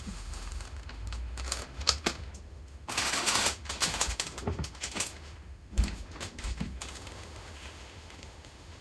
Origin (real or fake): fake